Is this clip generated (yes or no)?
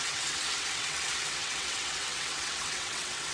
yes